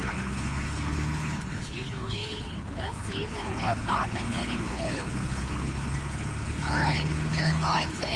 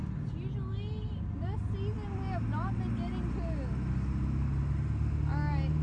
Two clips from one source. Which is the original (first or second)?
second